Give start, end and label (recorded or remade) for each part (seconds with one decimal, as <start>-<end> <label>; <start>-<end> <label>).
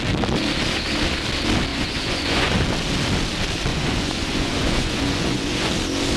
0.0-1.7 recorded; 1.7-2.5 remade; 2.5-3.7 recorded; 3.7-5.7 remade; 5.7-6.2 recorded